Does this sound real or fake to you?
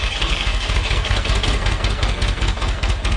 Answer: fake